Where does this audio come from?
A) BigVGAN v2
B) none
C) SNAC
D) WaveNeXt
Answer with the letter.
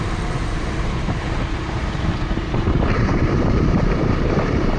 A